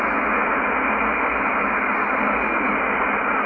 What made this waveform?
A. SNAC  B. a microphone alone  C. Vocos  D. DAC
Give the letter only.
B